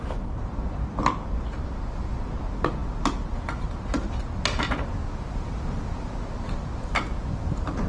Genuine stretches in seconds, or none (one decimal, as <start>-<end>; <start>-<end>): 0.0-7.9